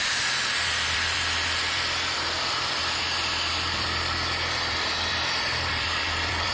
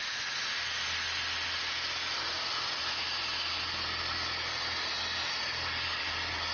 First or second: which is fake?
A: first